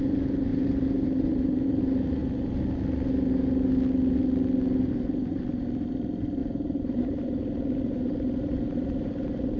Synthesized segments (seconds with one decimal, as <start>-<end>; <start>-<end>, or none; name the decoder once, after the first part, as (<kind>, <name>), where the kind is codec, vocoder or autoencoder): 0.5-1.8 (vocoder, BigVGAN v2); 6.4-9.6